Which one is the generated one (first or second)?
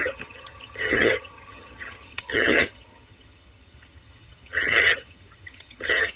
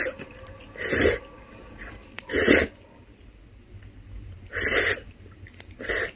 first